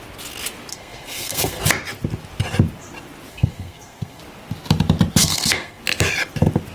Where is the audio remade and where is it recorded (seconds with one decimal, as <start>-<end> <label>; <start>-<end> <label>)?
0.0-0.7 recorded; 0.7-1.6 remade; 1.6-3.3 recorded; 3.3-4.2 remade; 4.2-5.2 recorded; 5.2-5.8 remade; 5.8-6.7 recorded